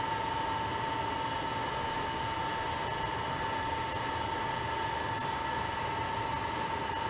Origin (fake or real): real